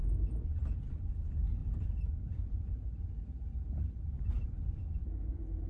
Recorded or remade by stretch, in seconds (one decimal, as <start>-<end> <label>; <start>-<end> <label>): 0.0-1.6 recorded; 1.6-5.0 remade; 5.0-5.7 recorded